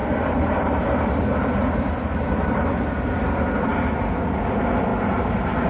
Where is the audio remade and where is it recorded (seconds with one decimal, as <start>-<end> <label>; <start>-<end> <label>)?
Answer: 0.0-5.7 recorded